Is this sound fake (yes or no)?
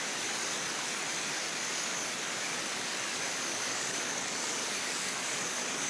yes